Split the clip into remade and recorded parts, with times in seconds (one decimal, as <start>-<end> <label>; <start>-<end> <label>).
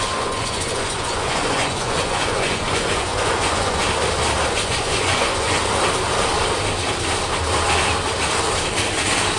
0.0-3.8 remade; 3.8-4.5 recorded; 4.5-5.6 remade; 5.6-9.4 recorded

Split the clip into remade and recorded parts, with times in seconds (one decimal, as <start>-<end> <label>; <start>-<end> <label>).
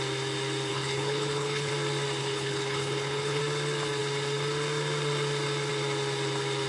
0.0-0.7 recorded; 0.7-1.7 remade; 1.7-2.2 recorded; 2.2-3.4 remade; 3.4-6.7 recorded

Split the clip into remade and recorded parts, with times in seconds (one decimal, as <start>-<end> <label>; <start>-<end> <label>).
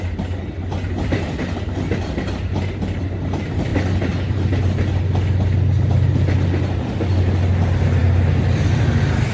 0.0-9.3 recorded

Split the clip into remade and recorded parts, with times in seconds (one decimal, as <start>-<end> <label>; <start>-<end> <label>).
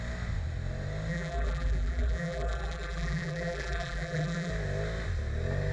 0.0-1.1 recorded; 1.1-4.5 remade; 4.5-5.7 recorded